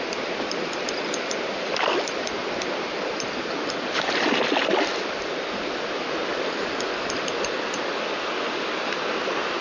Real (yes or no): yes